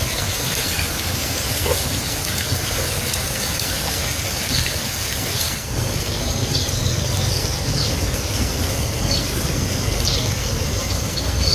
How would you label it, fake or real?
fake